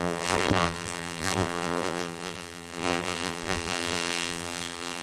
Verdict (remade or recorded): remade